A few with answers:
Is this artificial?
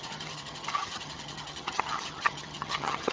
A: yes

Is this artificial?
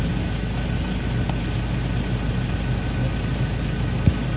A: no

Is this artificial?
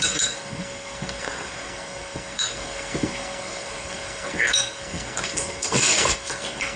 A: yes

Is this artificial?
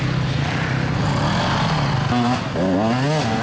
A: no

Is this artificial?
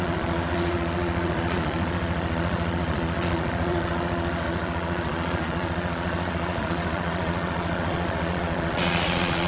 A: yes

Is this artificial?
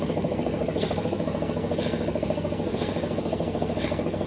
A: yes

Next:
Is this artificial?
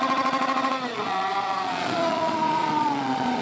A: yes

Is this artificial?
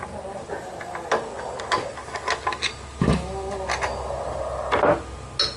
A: no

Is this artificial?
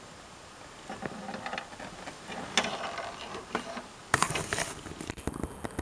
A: no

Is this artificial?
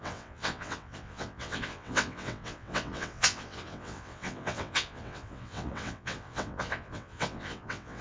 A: yes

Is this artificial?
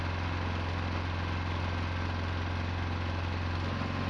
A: no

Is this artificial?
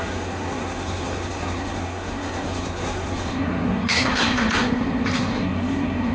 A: yes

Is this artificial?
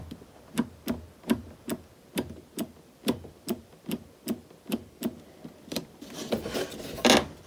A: yes